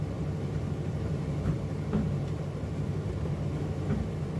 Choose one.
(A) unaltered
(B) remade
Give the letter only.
B